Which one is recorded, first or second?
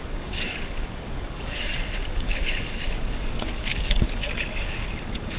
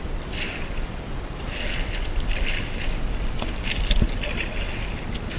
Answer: second